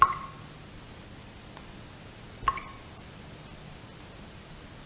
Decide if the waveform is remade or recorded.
recorded